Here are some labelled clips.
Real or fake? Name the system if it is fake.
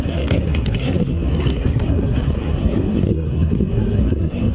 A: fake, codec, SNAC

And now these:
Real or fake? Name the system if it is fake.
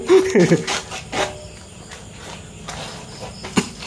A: real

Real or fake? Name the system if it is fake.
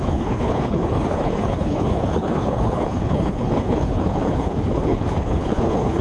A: fake, codec, HILCodec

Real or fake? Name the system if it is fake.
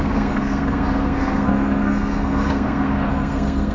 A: fake, codec, SNAC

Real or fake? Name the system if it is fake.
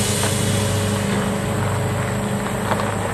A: real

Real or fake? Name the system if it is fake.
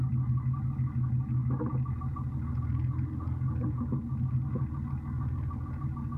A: real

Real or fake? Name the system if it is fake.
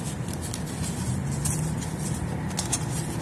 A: real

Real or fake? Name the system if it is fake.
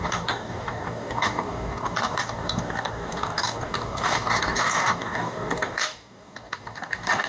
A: fake, codec, DAC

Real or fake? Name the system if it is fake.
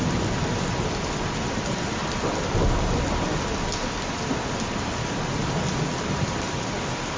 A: real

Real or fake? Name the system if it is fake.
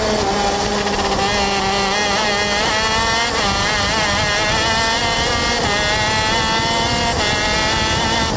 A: real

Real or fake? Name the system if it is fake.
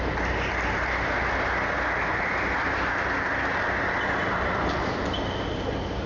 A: real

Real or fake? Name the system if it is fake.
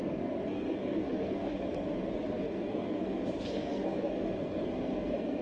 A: fake, codec, SNAC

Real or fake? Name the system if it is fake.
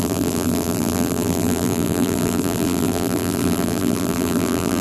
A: fake, vocoder, BigVGAN v2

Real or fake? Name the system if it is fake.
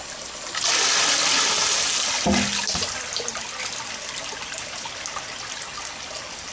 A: real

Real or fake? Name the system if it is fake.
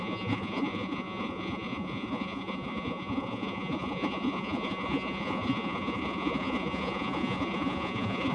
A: fake, vocoder, Vocos